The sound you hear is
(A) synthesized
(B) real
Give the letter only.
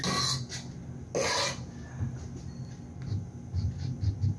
B